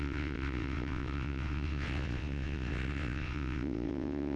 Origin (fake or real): fake